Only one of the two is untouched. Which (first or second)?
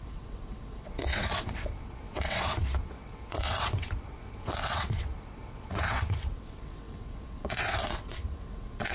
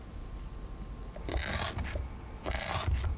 second